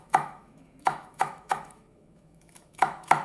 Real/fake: fake